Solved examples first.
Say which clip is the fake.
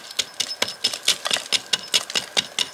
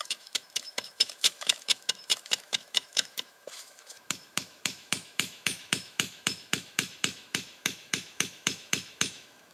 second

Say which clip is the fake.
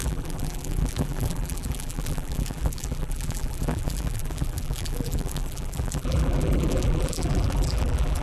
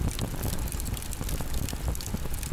first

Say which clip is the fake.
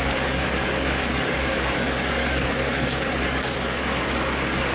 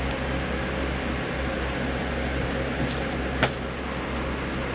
first